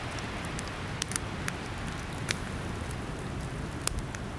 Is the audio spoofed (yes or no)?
no